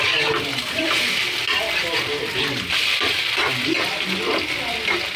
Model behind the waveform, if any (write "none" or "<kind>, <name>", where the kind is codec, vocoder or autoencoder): none